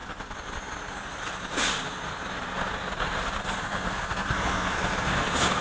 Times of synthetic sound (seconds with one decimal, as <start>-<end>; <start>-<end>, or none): 3.4-5.6